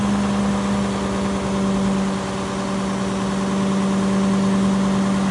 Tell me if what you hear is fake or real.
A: real